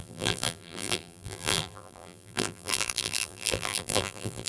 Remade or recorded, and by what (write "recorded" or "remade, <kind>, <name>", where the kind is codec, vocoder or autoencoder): remade, vocoder, BigVGAN v2